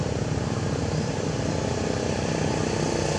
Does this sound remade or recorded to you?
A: remade